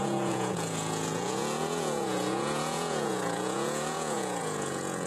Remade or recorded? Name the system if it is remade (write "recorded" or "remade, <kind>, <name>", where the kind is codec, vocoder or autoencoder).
remade, vocoder, Vocos